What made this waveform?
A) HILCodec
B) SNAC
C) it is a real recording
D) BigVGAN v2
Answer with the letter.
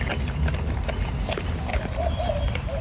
C